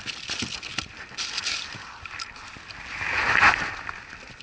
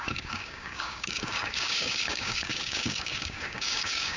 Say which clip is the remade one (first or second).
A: second